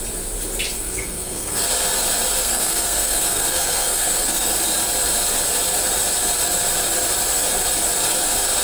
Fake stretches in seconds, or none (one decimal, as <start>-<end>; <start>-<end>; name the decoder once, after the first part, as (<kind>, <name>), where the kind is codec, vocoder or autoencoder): 0.7-1.7 (codec, SNAC); 2.4-4.5